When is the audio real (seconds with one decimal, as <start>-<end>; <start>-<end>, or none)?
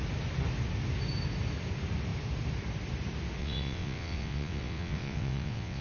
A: 0.0-3.4